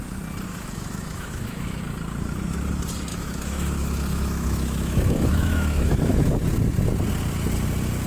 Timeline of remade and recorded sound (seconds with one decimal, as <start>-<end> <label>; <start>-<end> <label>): 0.0-0.5 recorded; 0.5-1.8 remade; 1.8-3.1 recorded; 3.1-6.3 remade; 6.3-8.1 recorded